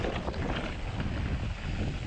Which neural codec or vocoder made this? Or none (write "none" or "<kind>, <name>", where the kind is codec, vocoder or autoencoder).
none